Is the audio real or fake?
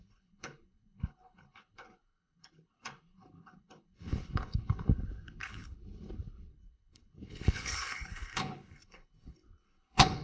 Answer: fake